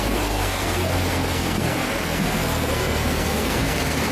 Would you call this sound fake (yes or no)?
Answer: yes